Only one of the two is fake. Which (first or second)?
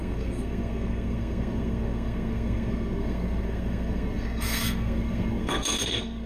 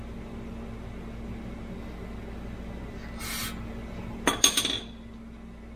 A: first